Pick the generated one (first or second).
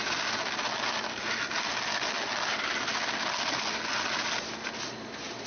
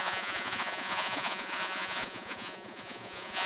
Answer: second